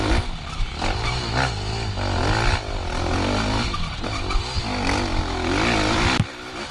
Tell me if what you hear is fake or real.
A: real